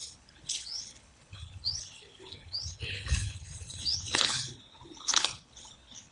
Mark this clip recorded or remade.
remade